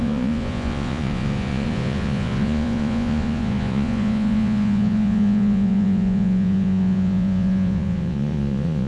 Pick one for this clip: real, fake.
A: fake